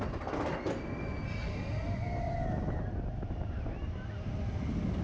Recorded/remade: recorded